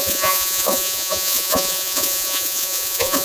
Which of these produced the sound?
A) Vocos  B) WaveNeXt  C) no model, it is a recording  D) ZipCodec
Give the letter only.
A